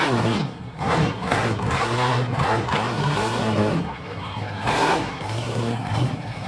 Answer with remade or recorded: remade